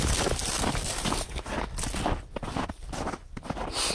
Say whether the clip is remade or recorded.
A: recorded